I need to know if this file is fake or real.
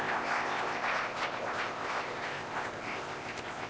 fake